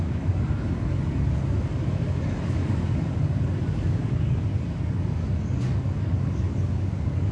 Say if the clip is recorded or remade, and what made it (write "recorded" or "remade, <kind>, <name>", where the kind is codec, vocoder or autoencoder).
remade, codec, DAC